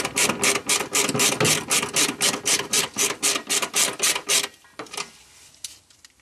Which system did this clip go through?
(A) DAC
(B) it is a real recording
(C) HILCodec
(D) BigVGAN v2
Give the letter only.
B